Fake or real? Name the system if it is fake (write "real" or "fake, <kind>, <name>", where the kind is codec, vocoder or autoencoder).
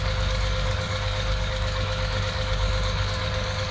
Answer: fake, codec, DAC